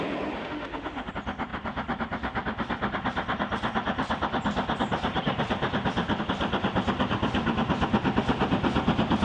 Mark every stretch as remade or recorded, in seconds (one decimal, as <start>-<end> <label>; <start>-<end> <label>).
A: 0.0-0.4 recorded; 0.4-1.1 remade; 1.1-9.2 recorded